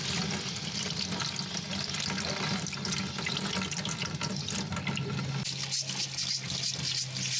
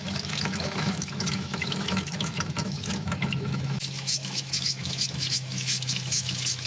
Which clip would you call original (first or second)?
first